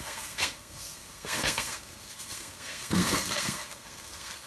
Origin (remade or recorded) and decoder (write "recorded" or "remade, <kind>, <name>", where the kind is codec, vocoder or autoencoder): remade, codec, SNAC